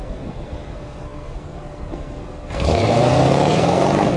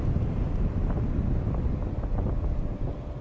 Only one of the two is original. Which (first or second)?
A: second